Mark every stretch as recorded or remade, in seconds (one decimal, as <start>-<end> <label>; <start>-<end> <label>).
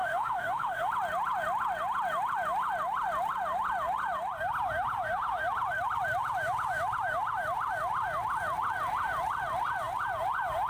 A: 0.0-0.9 remade; 0.9-10.7 recorded